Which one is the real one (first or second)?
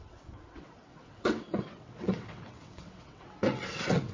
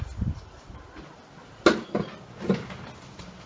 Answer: second